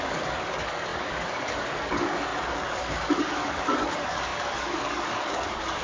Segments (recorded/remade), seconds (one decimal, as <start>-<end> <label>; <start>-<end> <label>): 0.0-5.8 remade